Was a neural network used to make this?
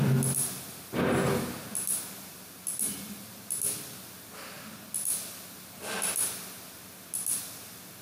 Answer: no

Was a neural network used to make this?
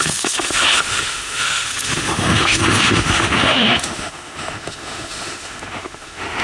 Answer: yes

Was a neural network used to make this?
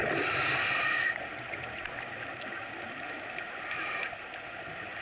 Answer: no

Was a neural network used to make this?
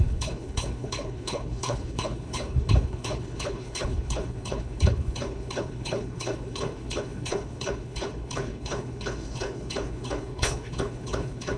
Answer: yes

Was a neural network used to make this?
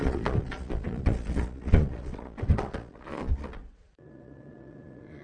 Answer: yes